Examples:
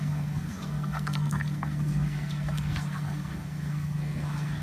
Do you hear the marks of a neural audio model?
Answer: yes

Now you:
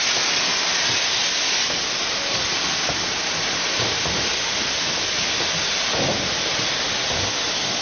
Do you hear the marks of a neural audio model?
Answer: no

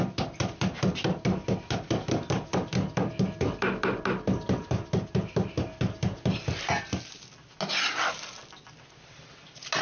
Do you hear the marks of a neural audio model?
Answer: no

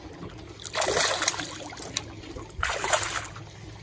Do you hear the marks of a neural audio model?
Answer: no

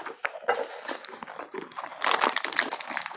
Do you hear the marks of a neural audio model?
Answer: no